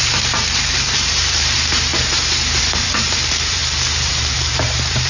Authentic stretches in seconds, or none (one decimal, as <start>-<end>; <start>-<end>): 1.9-2.6; 3.6-4.1